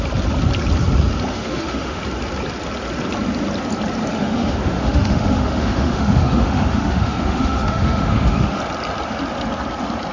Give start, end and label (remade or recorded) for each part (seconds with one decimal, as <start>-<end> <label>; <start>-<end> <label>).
0.0-1.3 recorded; 1.3-2.0 remade; 2.0-4.1 recorded; 4.1-8.6 remade; 8.6-10.1 recorded